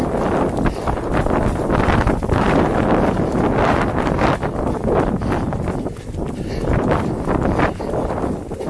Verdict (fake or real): real